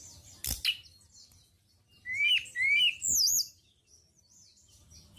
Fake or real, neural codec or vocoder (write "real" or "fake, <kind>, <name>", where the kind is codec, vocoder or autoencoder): real